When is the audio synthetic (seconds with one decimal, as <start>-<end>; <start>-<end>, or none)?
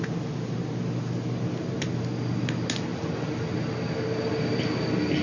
none